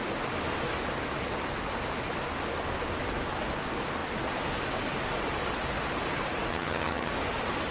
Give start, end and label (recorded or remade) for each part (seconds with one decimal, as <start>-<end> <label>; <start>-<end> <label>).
0.0-6.5 recorded; 6.5-7.1 remade; 7.1-7.7 recorded